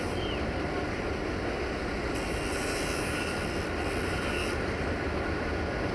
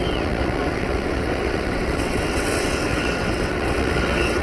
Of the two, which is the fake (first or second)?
second